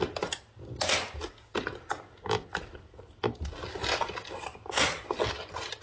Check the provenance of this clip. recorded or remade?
recorded